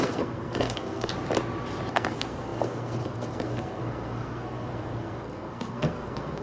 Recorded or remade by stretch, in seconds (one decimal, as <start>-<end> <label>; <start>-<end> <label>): 0.0-1.1 remade; 1.1-1.9 recorded; 1.9-6.4 remade